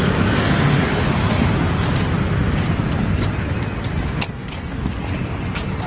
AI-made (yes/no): no